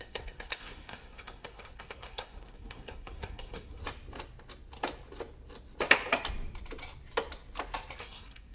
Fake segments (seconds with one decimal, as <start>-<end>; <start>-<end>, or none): 0.0-3.8; 8.0-8.5